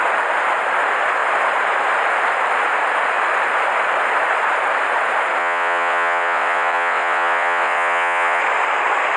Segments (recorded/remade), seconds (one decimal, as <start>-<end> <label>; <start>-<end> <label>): 0.0-5.4 recorded; 5.4-8.4 remade; 8.4-9.2 recorded